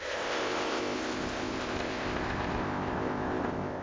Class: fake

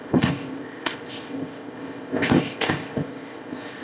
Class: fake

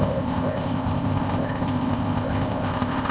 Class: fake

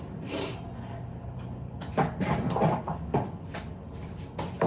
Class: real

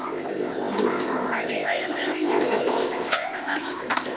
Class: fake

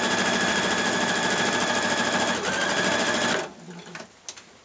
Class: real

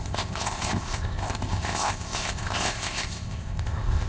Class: fake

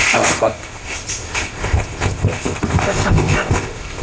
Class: fake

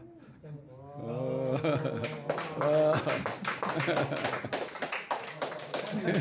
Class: real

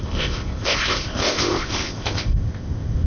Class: fake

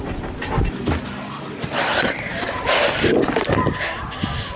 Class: real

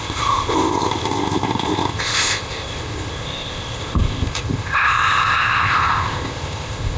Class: fake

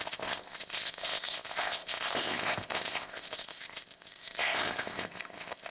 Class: fake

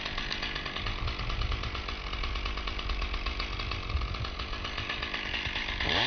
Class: real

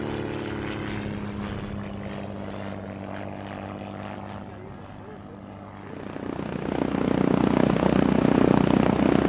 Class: real